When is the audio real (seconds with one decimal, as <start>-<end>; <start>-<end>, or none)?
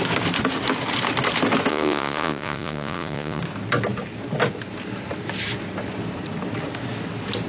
0.0-1.7; 3.4-7.5